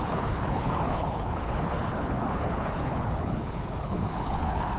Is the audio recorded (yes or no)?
no